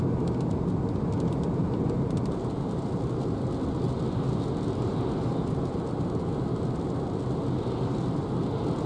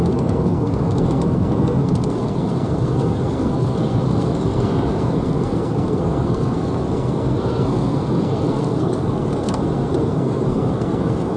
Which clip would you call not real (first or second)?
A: second